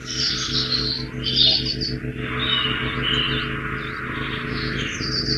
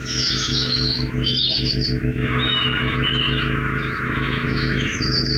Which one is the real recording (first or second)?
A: first